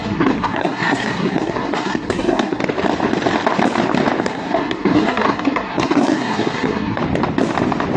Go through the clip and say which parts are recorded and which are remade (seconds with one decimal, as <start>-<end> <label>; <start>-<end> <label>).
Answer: 0.0-2.6 remade; 2.6-4.2 recorded; 4.2-7.0 remade; 7.0-8.0 recorded